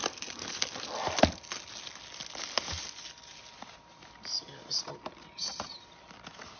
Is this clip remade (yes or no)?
no